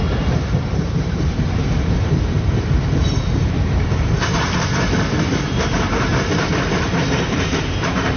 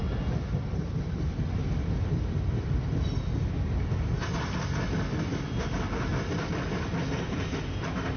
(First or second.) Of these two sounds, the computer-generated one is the first